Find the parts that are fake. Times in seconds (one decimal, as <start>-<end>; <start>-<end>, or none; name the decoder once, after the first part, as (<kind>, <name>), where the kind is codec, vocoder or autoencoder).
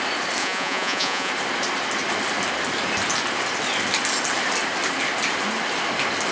0.4-1.3 (vocoder, Vocos)